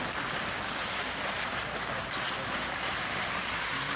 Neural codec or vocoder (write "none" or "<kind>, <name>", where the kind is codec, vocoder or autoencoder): none